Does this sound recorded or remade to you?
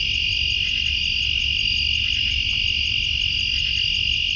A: recorded